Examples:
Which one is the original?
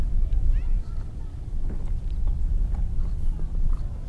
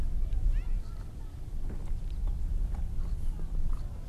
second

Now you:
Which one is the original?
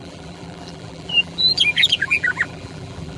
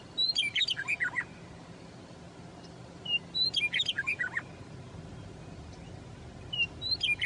second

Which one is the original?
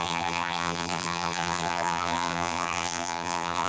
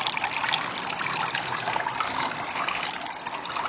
second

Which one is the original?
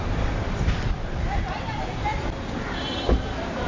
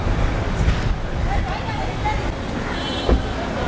second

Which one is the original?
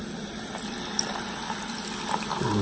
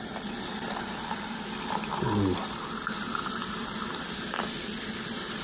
first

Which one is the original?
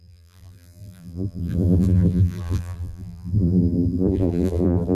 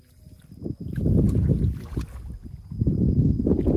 second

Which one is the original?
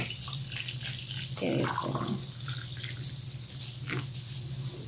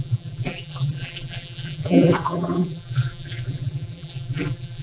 first